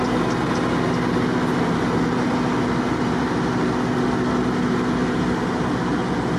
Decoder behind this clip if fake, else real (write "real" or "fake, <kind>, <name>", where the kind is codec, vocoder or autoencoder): real